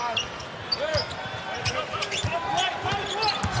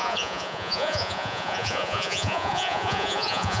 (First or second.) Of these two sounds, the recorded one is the first